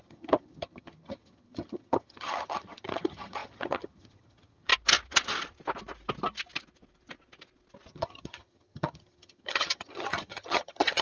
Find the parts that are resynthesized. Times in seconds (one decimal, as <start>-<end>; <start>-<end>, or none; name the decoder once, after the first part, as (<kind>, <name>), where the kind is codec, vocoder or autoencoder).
0.0-4.7 (vocoder, HiFi-GAN); 7.9-11.0